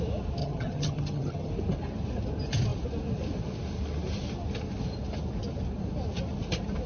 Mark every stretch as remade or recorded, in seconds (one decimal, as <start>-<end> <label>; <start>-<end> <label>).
0.0-0.4 recorded; 0.4-1.5 remade; 1.5-6.9 recorded